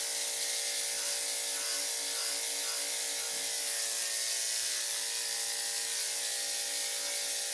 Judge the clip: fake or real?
real